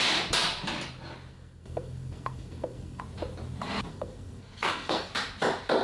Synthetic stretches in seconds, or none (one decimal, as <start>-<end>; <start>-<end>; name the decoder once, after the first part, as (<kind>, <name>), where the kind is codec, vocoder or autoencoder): 1.3-3.0 (codec, SNAC); 3.9-5.1